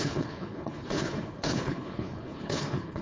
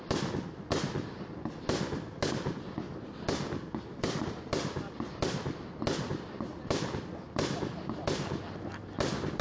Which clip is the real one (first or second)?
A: second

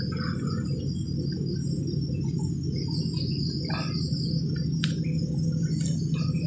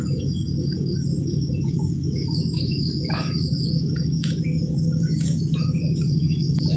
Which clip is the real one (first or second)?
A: first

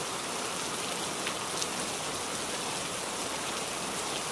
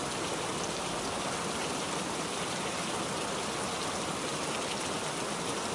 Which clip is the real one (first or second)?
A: first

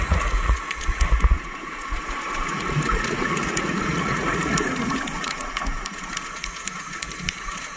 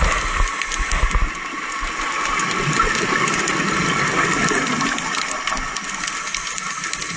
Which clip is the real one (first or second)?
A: second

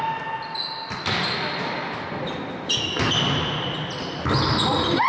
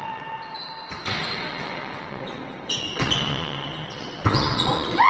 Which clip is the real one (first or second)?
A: first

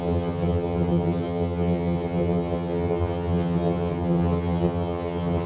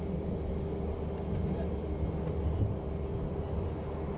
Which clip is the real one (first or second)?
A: second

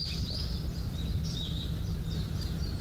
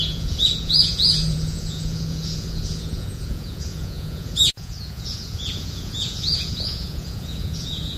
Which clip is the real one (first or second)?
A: first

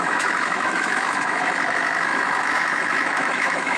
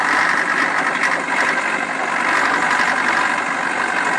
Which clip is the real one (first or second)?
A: second